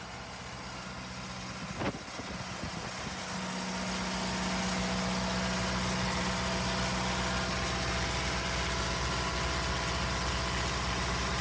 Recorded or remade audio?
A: recorded